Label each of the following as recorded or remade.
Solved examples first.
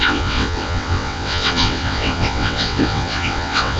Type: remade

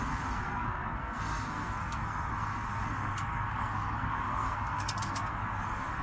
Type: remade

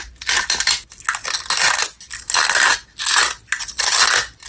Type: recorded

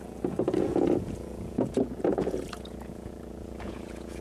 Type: remade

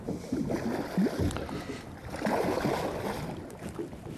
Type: recorded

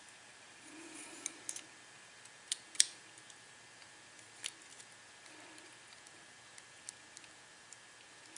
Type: recorded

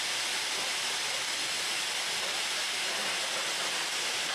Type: recorded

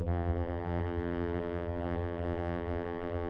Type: remade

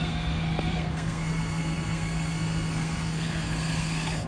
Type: remade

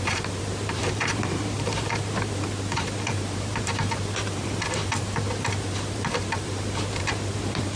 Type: remade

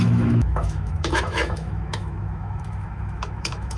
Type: remade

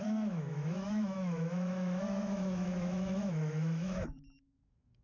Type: remade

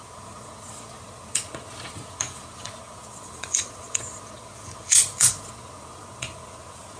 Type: remade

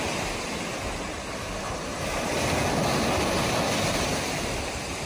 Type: recorded